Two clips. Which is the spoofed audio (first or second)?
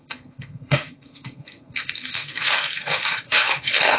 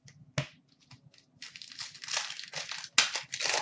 first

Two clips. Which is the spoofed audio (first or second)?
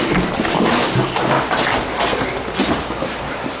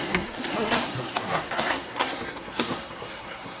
second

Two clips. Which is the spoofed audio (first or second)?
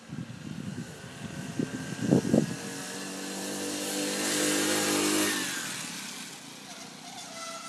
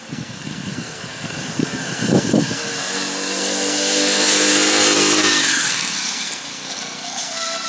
second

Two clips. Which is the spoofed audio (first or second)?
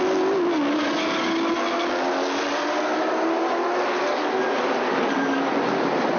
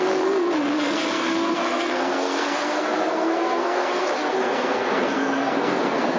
second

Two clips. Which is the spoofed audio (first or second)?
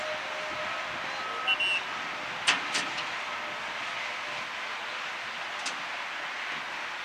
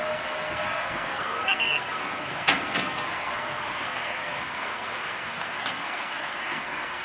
second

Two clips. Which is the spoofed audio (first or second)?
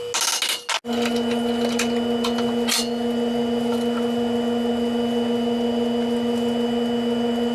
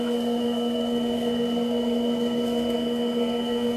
second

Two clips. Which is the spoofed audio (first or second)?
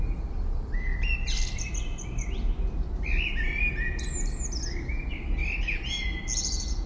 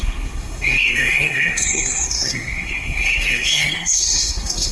second